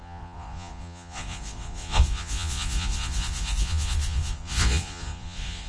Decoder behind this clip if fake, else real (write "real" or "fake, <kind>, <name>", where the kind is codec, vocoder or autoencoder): fake, vocoder, Vocos